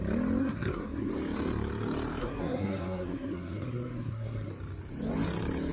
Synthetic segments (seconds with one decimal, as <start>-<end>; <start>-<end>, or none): 0.4-1.1; 2.2-4.5

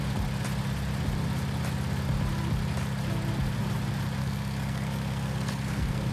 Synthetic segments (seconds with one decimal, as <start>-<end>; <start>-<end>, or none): 4.2-6.1

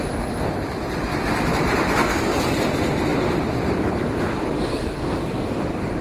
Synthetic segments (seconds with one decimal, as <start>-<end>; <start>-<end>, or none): 4.7-5.6

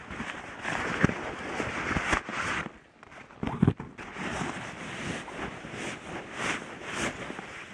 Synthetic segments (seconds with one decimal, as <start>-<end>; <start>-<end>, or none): none

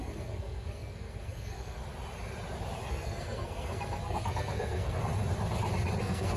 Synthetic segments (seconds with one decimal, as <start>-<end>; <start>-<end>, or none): 0.0-1.8; 2.9-5.0; 6.0-6.4

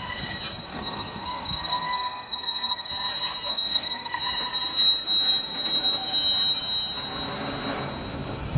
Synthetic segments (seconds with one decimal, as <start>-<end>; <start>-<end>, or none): 0.7-2.9; 3.5-4.2

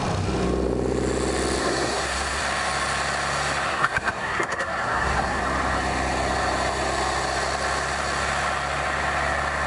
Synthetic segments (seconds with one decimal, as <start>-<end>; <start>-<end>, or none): 1.6-2.4; 3.7-5.4